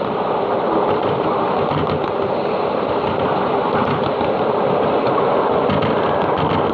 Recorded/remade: recorded